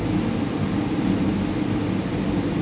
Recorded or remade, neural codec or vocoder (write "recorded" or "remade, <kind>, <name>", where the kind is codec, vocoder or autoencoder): recorded